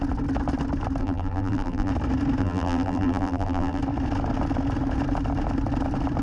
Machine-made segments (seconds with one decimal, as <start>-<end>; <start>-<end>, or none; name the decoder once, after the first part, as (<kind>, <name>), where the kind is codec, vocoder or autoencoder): 1.0-1.9 (vocoder, BigVGAN v2); 2.4-3.8